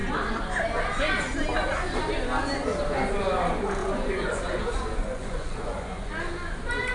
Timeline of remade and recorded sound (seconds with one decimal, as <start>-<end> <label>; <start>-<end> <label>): 0.0-3.8 recorded; 3.8-4.6 remade; 4.6-5.0 recorded; 5.0-6.1 remade; 6.1-6.9 recorded